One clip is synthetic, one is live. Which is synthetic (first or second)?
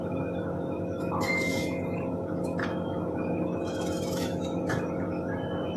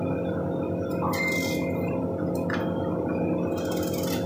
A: first